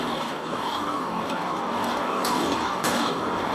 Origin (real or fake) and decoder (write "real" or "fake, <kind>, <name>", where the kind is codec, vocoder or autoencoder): fake, codec, DAC